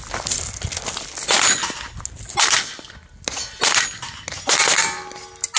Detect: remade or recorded recorded